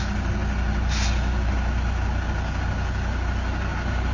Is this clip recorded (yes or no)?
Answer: yes